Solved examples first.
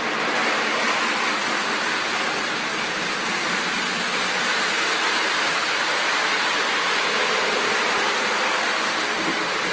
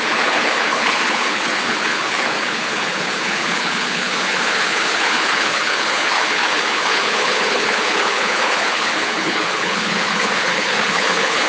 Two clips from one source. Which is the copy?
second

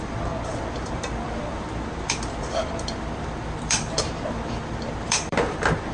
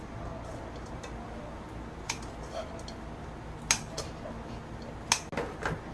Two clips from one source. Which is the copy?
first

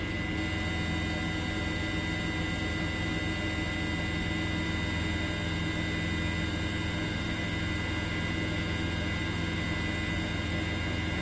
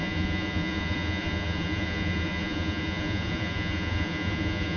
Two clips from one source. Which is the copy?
second